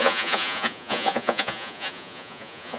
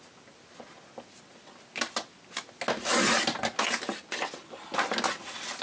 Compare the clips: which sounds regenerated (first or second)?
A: first